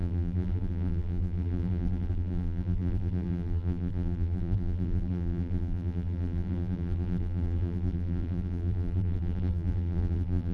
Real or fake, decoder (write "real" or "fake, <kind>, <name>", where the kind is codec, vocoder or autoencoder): fake, vocoder, BigVGAN v2